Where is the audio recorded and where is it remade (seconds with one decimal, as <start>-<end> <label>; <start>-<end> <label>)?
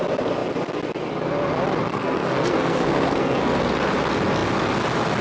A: 0.0-1.9 recorded; 1.9-3.6 remade; 3.6-5.2 recorded